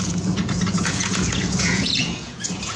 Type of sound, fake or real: fake